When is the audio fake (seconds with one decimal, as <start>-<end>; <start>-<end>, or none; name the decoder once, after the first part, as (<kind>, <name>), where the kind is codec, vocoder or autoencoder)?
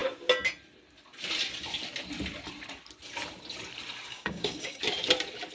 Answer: 4.1-4.8 (codec, DAC)